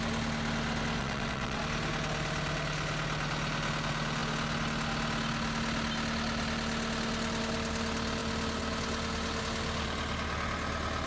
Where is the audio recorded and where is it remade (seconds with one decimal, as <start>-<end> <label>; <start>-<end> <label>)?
0.0-1.0 recorded; 1.0-1.6 remade; 1.6-11.1 recorded